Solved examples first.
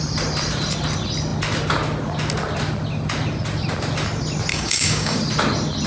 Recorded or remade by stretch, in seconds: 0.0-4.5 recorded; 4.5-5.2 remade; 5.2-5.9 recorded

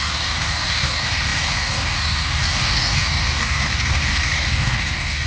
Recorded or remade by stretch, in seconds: 0.0-5.3 remade